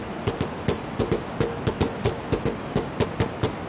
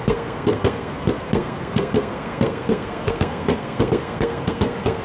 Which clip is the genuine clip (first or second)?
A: first